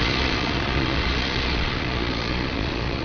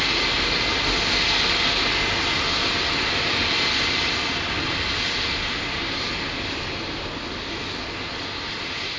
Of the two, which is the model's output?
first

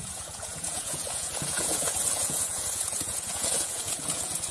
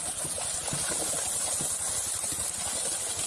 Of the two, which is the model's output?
first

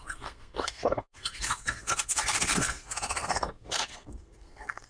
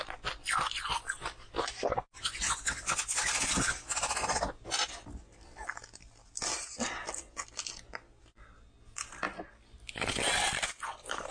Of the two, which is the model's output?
first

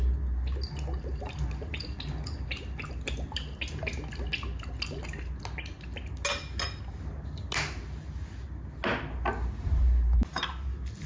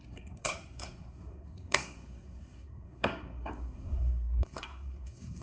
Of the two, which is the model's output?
second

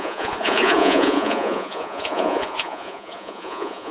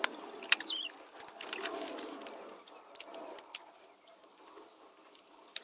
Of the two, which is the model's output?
first